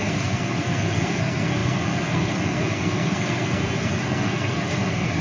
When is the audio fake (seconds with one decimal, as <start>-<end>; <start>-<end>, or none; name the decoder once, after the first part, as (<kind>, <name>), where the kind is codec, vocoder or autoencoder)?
0.0-5.2 (codec, SNAC)